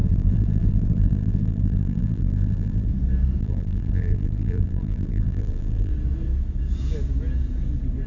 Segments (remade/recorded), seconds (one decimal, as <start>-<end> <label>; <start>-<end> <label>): 0.0-2.9 remade; 2.9-3.4 recorded; 3.4-5.9 remade; 5.9-8.1 recorded